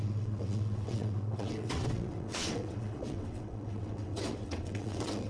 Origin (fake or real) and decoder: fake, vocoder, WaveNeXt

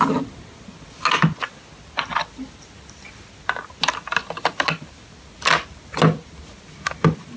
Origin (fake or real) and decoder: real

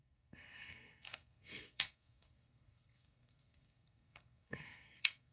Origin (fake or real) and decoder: fake, codec, SNAC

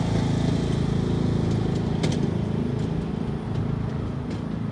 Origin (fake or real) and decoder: real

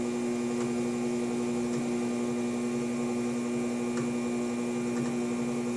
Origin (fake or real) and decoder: real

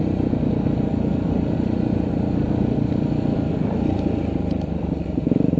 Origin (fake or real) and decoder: real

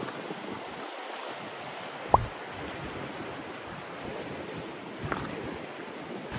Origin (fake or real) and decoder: real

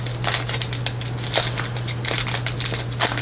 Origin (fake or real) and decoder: real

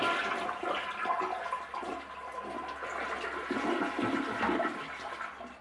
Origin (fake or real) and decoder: real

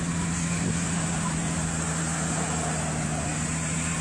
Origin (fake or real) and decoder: real